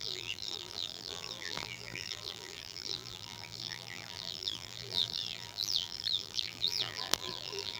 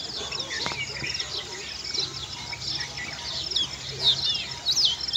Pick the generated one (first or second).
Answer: first